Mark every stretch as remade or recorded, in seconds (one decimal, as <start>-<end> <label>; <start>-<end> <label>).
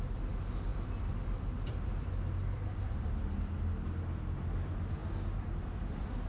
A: 0.0-6.3 recorded